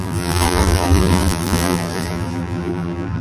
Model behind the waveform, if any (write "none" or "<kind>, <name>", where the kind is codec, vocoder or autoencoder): vocoder, BigVGAN v2